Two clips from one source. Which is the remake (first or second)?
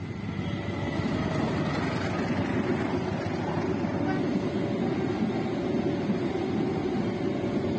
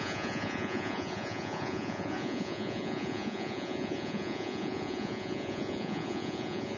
second